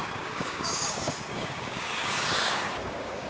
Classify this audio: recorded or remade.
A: remade